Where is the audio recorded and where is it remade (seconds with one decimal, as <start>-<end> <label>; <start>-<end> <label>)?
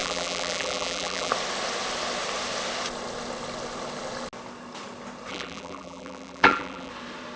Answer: 0.0-1.3 remade; 1.3-5.3 recorded; 5.3-6.9 remade; 6.9-7.4 recorded